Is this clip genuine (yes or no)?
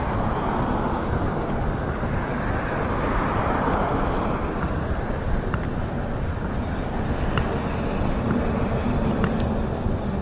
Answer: yes